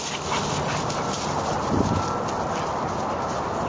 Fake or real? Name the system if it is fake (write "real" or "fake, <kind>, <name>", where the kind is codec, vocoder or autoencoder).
real